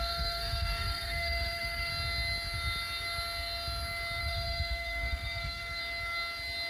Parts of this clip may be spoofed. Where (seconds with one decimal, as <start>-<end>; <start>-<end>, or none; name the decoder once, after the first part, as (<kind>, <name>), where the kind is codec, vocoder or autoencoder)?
0.0-1.9 (codec, SNAC); 4.2-5.8